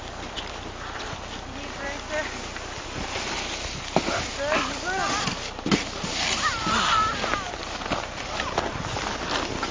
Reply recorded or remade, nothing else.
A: recorded